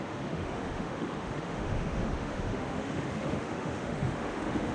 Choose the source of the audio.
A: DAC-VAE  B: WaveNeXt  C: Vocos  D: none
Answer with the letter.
A